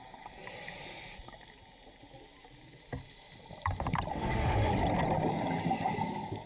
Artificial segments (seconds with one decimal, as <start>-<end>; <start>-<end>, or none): 4.1-4.7